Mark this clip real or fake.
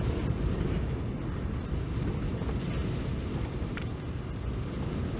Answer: real